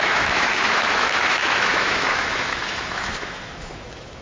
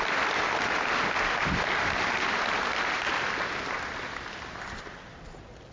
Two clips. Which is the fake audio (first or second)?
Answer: first